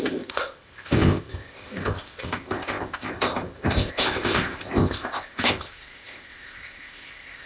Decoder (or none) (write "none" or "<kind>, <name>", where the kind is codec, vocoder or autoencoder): codec, ZipCodec